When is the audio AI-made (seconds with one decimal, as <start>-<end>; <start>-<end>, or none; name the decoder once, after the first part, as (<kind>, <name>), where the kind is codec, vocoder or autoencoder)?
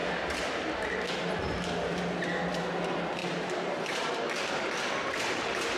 0.0-1.1 (vocoder, BigVGAN v2); 3.2-4.2